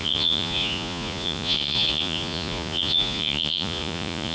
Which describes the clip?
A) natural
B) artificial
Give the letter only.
B